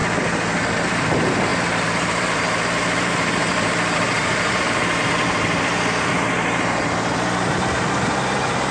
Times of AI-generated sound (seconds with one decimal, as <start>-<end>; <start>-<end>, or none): 0.9-1.5; 2.0-8.7